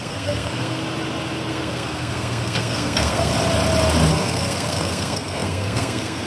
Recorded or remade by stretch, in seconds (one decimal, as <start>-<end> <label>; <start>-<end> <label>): 0.0-0.8 remade; 0.8-1.5 recorded; 1.5-3.3 remade; 3.3-4.1 recorded; 4.1-6.3 remade

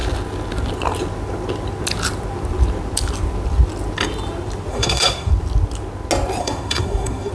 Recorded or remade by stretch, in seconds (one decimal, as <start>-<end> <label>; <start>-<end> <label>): 0.0-4.7 recorded; 4.7-5.3 remade; 5.3-6.4 recorded; 6.4-7.3 remade

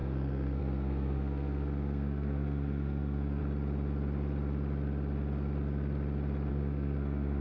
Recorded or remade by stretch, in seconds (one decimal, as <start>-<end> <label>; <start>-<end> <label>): 0.0-3.4 remade; 3.4-6.5 recorded; 6.5-7.4 remade

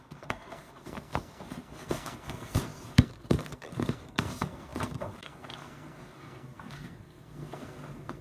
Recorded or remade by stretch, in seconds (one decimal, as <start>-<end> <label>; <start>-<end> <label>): 0.0-8.2 remade

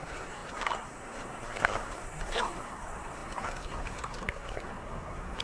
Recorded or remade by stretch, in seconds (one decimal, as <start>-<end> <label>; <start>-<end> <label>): 0.0-5.4 remade

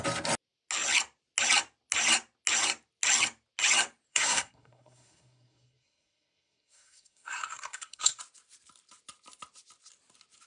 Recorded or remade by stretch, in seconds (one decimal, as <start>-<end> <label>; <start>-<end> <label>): 0.0-4.1 recorded; 4.1-8.2 remade; 8.2-10.5 recorded

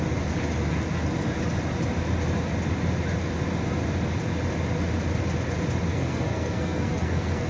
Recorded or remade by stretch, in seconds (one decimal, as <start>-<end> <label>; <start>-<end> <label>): 0.0-5.9 recorded; 5.9-7.5 remade

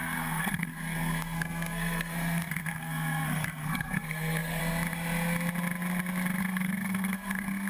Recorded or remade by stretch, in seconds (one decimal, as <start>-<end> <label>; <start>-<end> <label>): 0.0-4.6 remade; 4.6-6.4 recorded; 6.4-7.7 remade